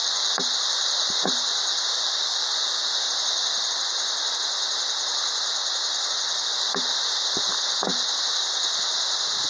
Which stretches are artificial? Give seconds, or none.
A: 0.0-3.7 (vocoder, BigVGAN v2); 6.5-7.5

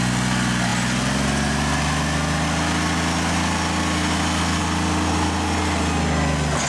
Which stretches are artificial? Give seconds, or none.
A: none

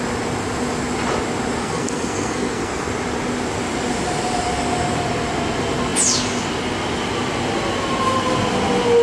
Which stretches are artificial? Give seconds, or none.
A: 1.6-2.9 (codec, SNAC)

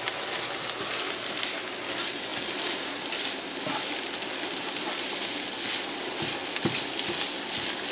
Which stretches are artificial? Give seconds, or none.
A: none

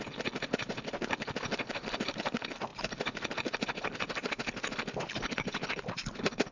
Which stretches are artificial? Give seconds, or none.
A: none

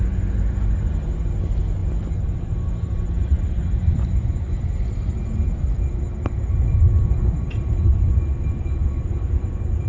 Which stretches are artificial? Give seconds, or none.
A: 1.8-2.7 (vocoder, BigVGAN v2); 4.3-6.0; 8.8-9.9

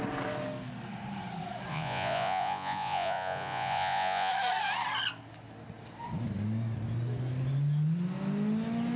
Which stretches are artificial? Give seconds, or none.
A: 1.7-4.3 (vocoder, Vocos)